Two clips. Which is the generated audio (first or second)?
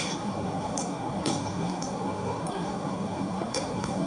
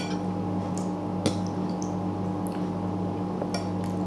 first